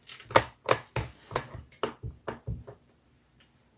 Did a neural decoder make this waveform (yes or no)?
no